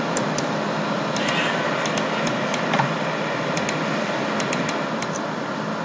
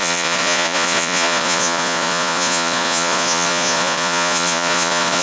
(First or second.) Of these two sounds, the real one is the first